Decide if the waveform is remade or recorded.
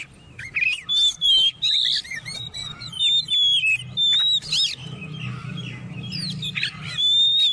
recorded